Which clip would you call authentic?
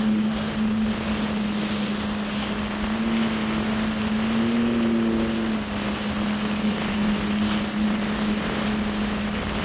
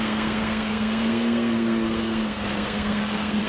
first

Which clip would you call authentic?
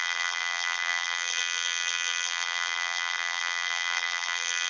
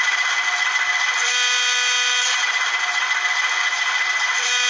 second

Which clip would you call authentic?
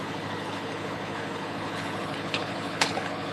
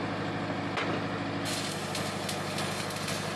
second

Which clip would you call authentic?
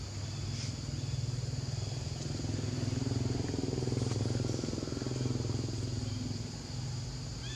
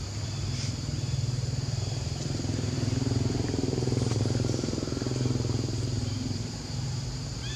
first